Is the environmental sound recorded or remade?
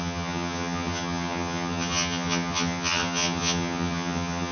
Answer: remade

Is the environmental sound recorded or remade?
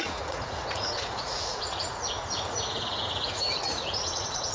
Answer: remade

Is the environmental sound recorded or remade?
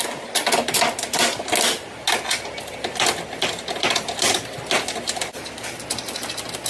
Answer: recorded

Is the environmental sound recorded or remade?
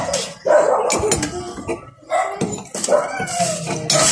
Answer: recorded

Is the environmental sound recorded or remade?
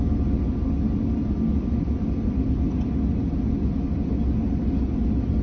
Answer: recorded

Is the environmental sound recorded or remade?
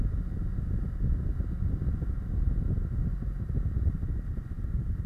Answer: recorded